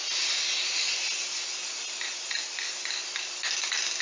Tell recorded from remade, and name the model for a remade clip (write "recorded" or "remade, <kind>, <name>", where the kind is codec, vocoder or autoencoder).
recorded